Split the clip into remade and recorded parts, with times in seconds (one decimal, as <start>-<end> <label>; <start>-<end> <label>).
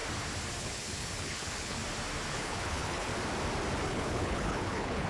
0.0-0.6 recorded; 0.6-1.8 remade; 1.8-2.3 recorded; 2.3-3.1 remade; 3.1-3.8 recorded; 3.8-5.1 remade